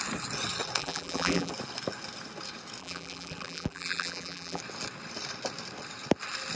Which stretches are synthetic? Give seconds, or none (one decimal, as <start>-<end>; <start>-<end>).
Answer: 0.8-1.5; 2.8-4.6